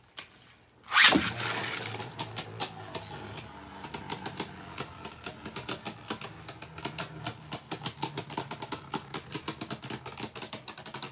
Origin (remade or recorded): recorded